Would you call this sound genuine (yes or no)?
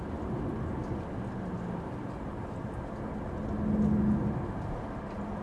yes